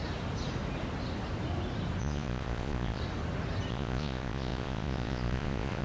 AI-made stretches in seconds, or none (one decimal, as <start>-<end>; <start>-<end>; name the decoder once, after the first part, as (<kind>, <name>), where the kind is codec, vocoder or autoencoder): 2.0-3.0 (vocoder, Vocos); 3.7-5.8